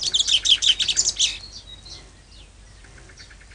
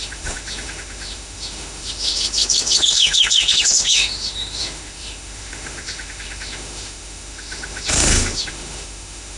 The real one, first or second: first